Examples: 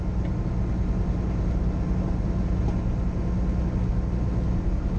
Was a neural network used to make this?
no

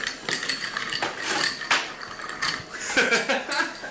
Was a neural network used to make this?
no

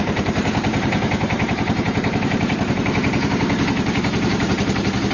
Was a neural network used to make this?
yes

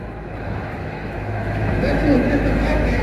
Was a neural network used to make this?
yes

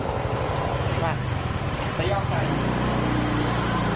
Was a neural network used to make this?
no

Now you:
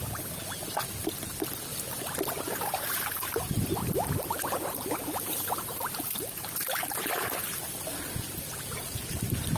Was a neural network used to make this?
no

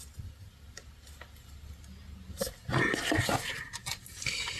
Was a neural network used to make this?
no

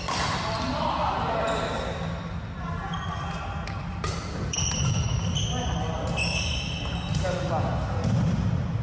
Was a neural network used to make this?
no